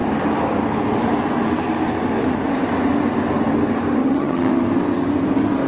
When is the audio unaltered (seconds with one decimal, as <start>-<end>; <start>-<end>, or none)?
0.0-4.0; 4.5-5.7